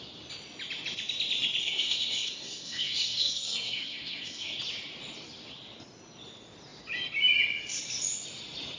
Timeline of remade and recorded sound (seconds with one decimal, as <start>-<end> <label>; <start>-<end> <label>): 0.0-1.6 recorded; 1.6-4.6 remade; 4.6-8.8 recorded